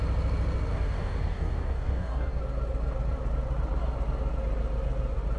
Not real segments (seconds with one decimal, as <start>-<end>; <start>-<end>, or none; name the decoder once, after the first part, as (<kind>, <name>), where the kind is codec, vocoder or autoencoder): 0.7-2.4 (codec, DAC)